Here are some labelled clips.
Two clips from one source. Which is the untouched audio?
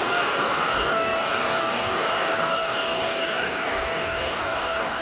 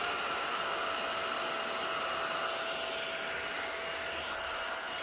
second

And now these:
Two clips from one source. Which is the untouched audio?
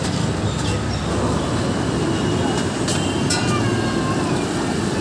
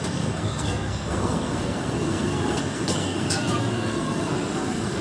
first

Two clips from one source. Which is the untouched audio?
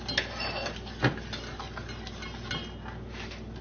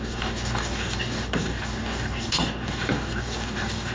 first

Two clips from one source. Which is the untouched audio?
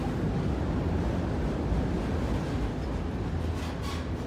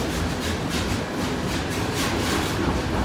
first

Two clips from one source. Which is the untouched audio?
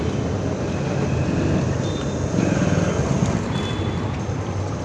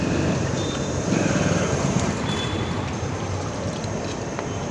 first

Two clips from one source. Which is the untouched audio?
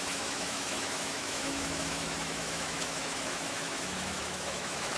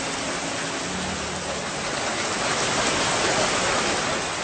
second